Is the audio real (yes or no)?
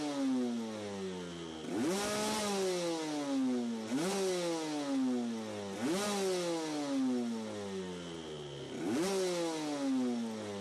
yes